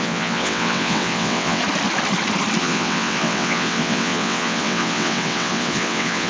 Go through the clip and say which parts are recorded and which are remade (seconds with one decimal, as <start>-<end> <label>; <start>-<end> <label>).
0.0-1.6 remade; 1.6-2.6 recorded; 2.6-6.3 remade